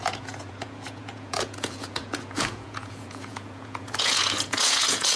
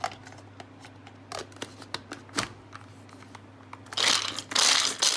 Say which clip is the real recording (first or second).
second